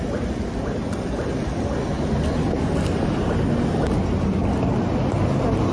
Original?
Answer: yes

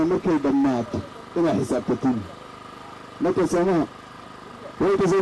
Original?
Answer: yes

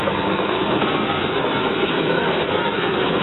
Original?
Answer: no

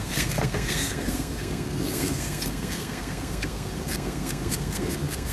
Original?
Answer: no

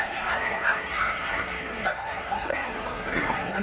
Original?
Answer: no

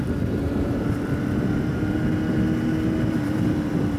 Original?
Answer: yes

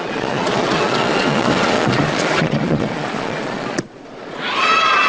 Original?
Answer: no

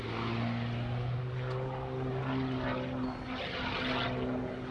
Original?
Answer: yes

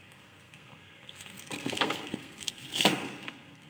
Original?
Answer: no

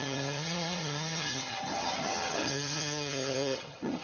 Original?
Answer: no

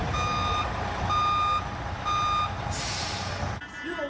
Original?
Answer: yes